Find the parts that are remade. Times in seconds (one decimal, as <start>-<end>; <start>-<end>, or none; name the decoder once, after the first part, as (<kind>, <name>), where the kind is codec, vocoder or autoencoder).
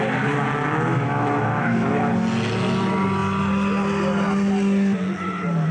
0.9-2.1 (autoencoder, DAC-VAE)